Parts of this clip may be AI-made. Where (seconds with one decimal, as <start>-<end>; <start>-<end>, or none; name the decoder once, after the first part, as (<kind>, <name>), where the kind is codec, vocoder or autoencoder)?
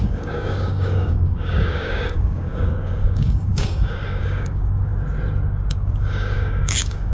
0.0-4.9 (codec, DAC); 5.7-7.1